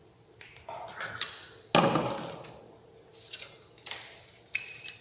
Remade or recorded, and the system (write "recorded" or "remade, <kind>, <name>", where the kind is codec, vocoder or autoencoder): recorded